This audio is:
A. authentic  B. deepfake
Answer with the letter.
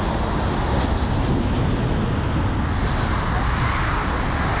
A